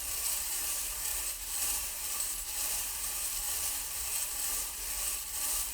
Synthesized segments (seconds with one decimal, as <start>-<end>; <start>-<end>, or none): 0.0-5.7